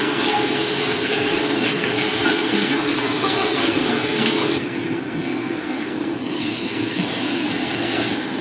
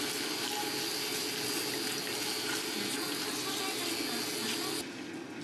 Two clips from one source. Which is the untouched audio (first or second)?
second